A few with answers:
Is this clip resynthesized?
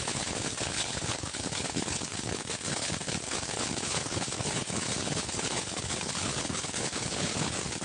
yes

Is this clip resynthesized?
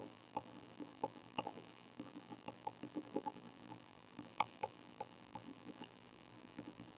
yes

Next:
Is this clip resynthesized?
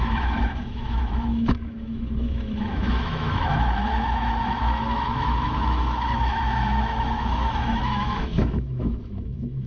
yes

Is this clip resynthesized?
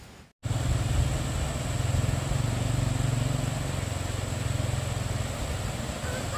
no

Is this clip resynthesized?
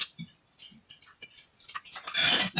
no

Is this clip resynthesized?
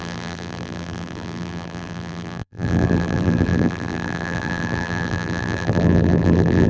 yes